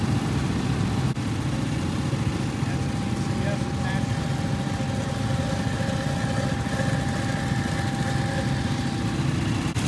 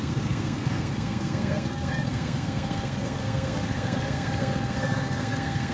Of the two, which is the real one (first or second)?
first